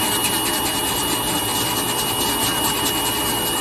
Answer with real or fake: real